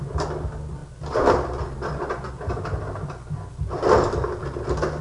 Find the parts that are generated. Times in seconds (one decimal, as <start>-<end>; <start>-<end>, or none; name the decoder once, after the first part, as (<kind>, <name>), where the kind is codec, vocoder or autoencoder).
none